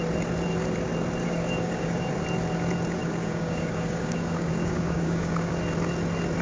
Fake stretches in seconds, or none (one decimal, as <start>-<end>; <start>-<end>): 1.2-2.1; 3.0-5.5